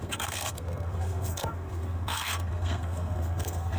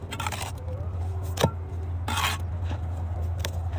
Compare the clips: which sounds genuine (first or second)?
second